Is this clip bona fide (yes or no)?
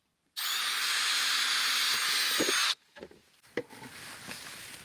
yes